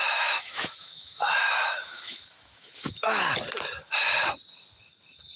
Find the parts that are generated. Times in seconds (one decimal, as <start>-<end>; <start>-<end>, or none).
0.0-3.2